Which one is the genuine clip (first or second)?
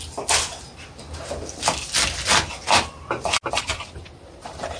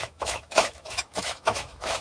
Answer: first